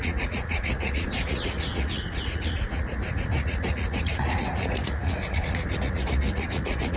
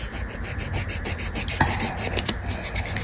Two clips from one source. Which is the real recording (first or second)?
second